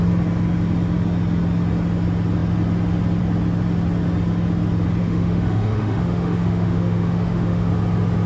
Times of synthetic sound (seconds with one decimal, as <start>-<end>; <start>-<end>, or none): 5.0-7.7